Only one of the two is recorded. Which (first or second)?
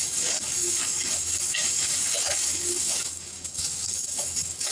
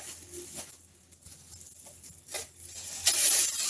second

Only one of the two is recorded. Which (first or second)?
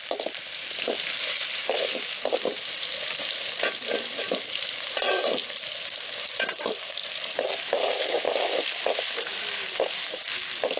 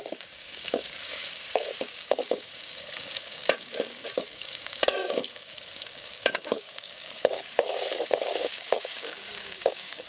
first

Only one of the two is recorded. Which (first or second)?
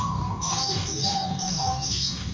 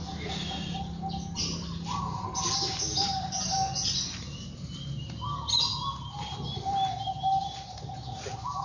second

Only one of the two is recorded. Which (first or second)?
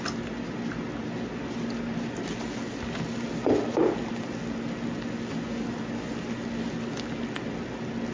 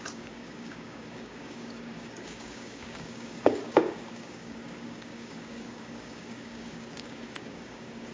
first